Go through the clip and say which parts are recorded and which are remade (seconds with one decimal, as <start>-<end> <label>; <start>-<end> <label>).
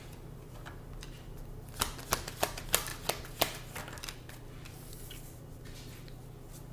0.0-6.7 recorded